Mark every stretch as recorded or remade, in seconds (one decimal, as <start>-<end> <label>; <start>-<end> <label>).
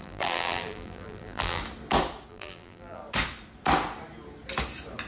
0.0-1.6 remade; 1.6-2.3 recorded; 2.3-3.0 remade; 3.0-5.1 recorded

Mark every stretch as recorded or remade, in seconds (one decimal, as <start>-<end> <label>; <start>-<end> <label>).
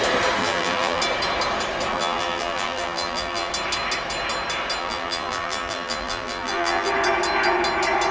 0.0-0.4 recorded; 0.4-1.0 remade; 1.0-1.9 recorded; 1.9-3.5 remade; 3.5-4.8 recorded; 4.8-6.9 remade; 6.9-8.1 recorded